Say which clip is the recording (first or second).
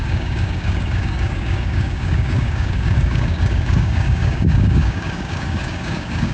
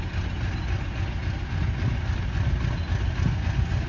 second